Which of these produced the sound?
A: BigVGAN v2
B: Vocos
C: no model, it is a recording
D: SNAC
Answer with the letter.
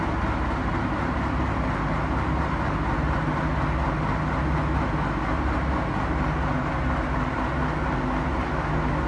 C